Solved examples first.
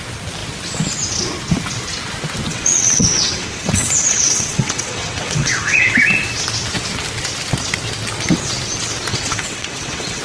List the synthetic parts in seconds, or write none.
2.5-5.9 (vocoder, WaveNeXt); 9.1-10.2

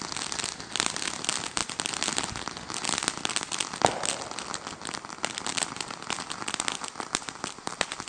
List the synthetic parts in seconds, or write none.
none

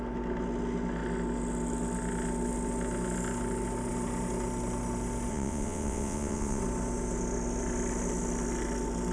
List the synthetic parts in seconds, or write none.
5.3-6.6 (vocoder, WaveNeXt)

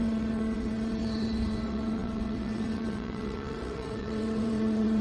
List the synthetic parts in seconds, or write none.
0.0-5.0 (vocoder, WaveNeXt)

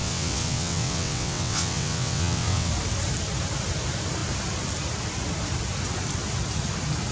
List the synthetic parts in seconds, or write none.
0.0-2.7 (vocoder, WaveNeXt)